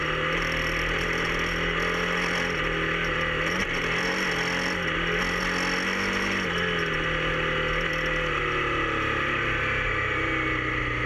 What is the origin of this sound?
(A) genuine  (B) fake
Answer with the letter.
A